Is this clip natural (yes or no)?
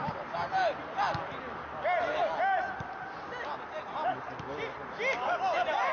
yes